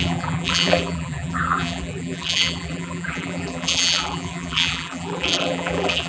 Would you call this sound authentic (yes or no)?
no